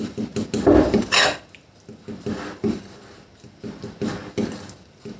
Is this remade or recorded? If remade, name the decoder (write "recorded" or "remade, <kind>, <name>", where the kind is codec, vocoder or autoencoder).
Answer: recorded